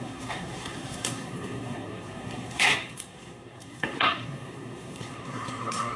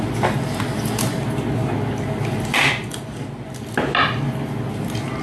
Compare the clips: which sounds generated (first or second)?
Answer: first